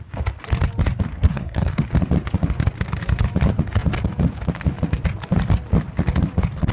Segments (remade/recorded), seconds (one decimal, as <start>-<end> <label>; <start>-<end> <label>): 0.0-1.1 recorded; 1.1-1.8 remade; 1.8-6.7 recorded